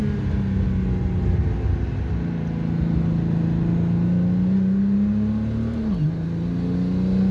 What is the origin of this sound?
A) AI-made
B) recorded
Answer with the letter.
B